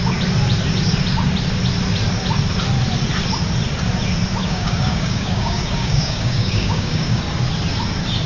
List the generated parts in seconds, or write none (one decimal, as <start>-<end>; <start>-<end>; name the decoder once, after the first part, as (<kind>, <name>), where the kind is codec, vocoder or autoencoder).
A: 4.4-7.2 (codec, DAC)